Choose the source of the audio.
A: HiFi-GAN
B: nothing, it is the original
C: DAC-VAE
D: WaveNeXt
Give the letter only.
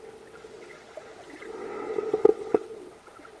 D